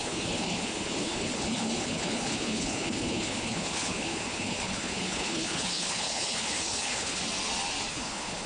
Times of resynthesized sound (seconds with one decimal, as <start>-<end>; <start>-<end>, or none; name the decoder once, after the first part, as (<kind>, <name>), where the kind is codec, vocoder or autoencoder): 0.0-7.2 (codec, HILCodec); 7.9-8.5